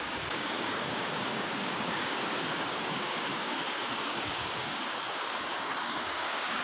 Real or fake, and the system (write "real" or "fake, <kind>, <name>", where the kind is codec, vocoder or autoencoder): fake, codec, DAC